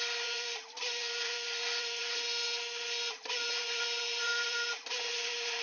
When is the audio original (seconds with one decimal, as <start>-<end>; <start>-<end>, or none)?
2.0-3.2